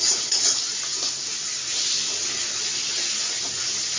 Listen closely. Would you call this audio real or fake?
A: real